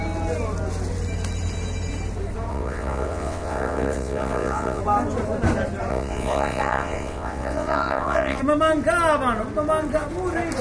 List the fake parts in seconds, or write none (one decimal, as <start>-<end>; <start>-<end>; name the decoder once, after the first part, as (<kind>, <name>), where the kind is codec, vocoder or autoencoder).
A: 2.5-4.8 (vocoder, WaveNeXt); 5.9-8.4